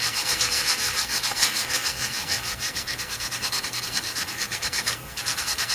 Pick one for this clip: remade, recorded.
remade